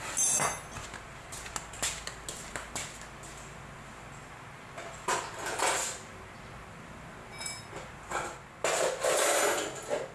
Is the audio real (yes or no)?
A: yes